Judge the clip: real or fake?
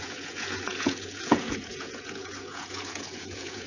fake